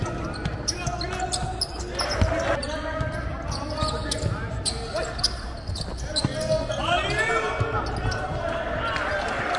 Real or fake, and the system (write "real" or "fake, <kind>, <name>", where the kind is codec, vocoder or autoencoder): real